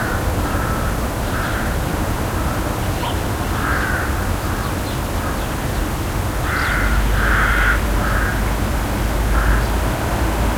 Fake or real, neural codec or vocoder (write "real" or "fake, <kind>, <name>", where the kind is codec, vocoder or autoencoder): real